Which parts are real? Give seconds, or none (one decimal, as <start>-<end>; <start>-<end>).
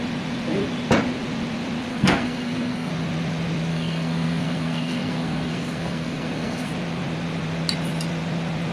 0.0-1.9; 2.9-3.7; 6.7-8.7